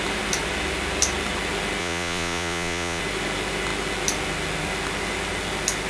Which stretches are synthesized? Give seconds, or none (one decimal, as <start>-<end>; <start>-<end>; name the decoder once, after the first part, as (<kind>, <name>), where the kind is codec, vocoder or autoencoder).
1.8-3.0 (vocoder, Vocos)